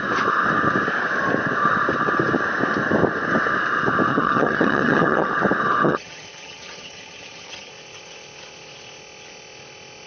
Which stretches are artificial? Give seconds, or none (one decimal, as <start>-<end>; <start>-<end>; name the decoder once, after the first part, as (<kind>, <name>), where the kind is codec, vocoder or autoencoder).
4.1-5.3 (vocoder, HiFi-GAN); 5.8-7.7

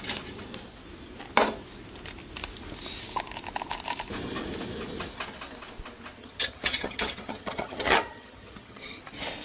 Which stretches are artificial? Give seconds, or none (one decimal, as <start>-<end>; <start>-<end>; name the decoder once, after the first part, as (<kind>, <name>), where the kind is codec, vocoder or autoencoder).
6.2-9.0 (vocoder, HiFi-GAN)

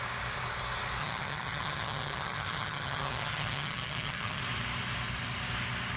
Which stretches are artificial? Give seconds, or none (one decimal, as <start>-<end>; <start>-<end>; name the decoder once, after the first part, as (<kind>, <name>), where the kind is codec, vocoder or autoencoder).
1.0-4.4 (vocoder, HiFi-GAN)

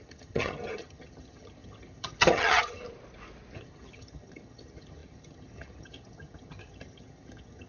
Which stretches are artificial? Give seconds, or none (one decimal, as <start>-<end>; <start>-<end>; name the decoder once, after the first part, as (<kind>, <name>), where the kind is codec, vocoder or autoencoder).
0.0-2.8 (vocoder, HiFi-GAN); 3.6-7.7